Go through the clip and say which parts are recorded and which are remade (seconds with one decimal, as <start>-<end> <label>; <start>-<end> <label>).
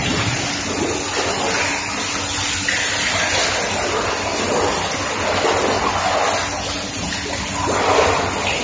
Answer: 0.0-8.6 recorded